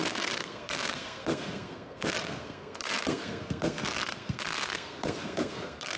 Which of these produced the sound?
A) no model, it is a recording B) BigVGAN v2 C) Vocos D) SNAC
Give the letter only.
D